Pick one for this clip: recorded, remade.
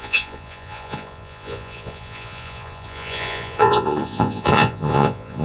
remade